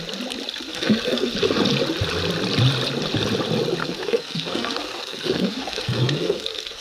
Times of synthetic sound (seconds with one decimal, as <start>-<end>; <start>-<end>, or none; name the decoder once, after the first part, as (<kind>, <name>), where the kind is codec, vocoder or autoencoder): 0.7-1.3 (codec, SNAC); 3.8-6.8